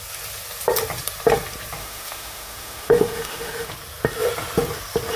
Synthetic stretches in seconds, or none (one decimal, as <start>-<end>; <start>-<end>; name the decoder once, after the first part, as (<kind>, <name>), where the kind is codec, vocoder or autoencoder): 1.8-3.7 (autoencoder, DAC-VAE)